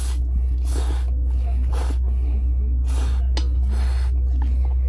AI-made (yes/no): no